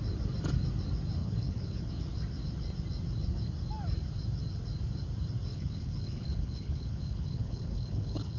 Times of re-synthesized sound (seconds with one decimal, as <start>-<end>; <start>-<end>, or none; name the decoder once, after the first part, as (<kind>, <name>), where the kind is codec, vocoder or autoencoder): 1.2-1.9 (codec, HILCodec); 5.5-8.4